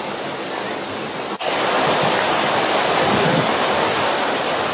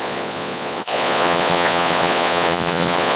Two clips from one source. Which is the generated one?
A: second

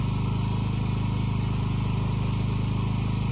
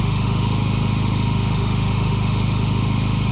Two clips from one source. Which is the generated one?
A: second